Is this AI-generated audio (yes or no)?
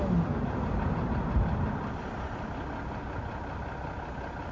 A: no